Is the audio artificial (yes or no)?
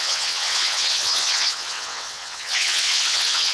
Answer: yes